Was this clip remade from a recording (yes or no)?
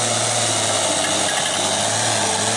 no